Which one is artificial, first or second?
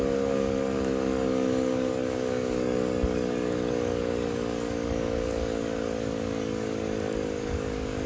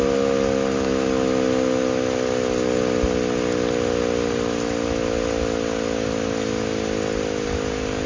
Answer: first